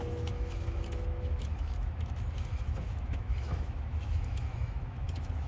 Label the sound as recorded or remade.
remade